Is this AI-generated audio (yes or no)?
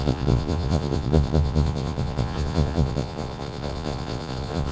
yes